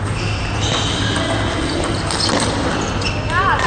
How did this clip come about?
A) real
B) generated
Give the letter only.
A